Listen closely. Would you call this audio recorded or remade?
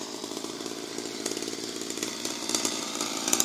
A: remade